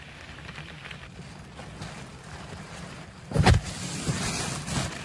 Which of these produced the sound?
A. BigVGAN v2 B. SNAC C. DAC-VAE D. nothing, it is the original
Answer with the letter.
D